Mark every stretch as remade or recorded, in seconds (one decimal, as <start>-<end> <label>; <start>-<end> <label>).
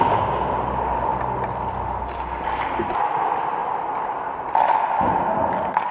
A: 0.0-5.9 recorded